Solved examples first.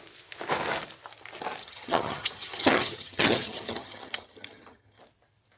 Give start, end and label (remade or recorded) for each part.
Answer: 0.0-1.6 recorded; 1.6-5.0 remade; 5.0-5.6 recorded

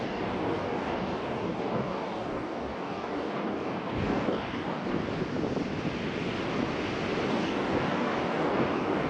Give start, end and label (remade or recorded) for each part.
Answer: 0.0-4.9 remade; 4.9-7.3 recorded; 7.3-9.1 remade

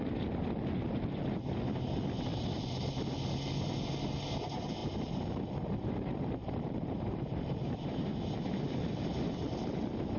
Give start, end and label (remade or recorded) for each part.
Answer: 0.0-2.3 recorded; 2.3-2.8 remade; 2.8-4.8 recorded; 4.8-8.4 remade; 8.4-10.2 recorded